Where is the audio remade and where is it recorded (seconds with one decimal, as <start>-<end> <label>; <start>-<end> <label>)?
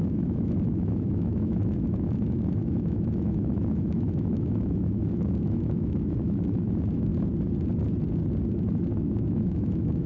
0.0-7.1 remade; 7.1-9.0 recorded; 9.0-10.1 remade